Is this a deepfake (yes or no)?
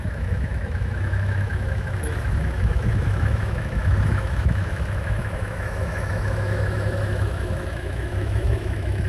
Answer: yes